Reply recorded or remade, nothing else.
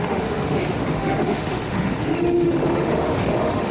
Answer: remade